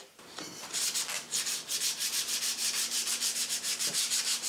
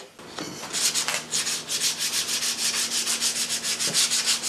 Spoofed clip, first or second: first